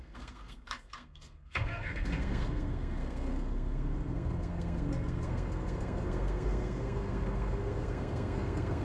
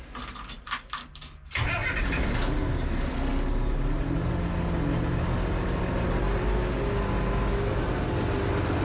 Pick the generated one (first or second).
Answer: first